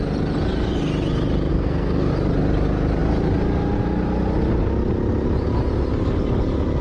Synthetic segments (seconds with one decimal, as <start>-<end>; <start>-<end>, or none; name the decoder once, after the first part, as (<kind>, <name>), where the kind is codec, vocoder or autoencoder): 1.5-2.1 (codec, SNAC)